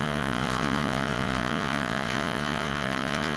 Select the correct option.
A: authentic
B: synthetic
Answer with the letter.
B